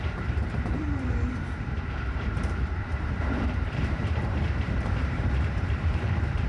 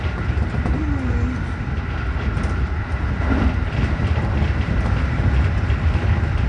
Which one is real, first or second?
second